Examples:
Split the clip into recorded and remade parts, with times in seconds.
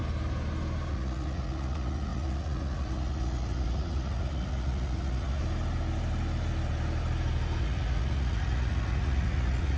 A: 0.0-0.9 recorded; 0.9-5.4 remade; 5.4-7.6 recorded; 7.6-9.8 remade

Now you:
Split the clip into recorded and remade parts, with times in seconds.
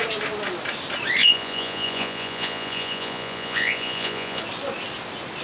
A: 0.0-1.2 recorded; 1.2-4.4 remade; 4.4-5.4 recorded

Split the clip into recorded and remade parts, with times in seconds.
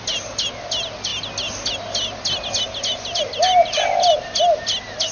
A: 0.0-5.1 recorded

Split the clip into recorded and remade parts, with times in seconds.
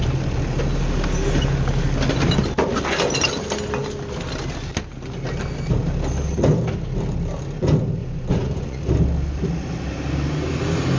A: 0.0-8.0 recorded; 8.0-8.8 remade; 8.8-11.0 recorded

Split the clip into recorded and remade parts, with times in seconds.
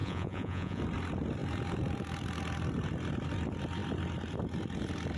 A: 0.0-0.8 remade; 0.8-5.2 recorded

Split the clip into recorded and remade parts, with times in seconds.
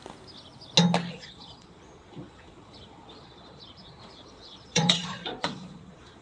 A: 0.0-1.1 recorded; 1.1-6.2 remade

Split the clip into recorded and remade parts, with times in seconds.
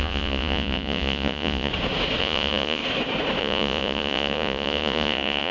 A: 0.0-1.7 remade; 1.7-2.2 recorded; 2.2-2.8 remade; 2.8-3.4 recorded; 3.4-5.5 remade